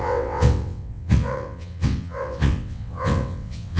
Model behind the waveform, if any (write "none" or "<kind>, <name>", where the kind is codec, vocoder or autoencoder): vocoder, WaveNeXt